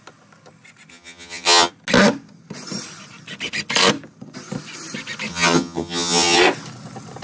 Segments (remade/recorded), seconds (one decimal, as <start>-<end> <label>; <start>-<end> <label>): 0.0-0.9 recorded; 0.9-1.7 remade; 1.7-5.3 recorded; 5.3-6.4 remade; 6.4-7.2 recorded